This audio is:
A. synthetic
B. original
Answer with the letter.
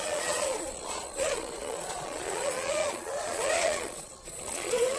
A